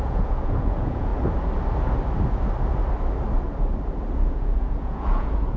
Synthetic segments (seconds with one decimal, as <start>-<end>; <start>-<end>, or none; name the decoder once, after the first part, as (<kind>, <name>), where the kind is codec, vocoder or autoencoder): 0.0-1.1 (vocoder, Vocos); 4.2-5.6